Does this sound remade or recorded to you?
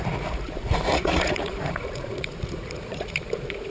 remade